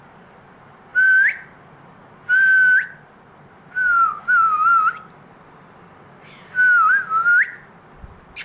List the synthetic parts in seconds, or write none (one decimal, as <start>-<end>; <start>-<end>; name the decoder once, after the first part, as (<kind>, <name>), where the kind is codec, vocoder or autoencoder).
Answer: none